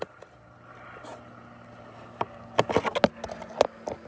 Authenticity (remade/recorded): recorded